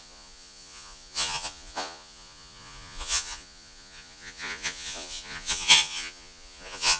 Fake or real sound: fake